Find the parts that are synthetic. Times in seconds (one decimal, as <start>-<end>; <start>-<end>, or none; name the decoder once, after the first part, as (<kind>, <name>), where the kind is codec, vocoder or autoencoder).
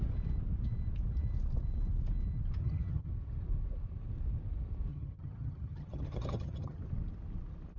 2.6-3.1 (vocoder, HiFi-GAN); 4.9-6.8